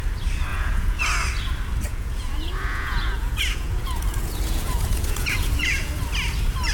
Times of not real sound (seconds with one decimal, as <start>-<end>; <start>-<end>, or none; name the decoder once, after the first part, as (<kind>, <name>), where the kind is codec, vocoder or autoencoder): 0.5-1.0 (vocoder, Vocos); 1.9-5.9